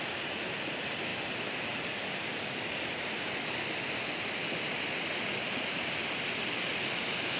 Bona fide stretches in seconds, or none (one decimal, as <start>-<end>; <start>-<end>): 0.0-7.4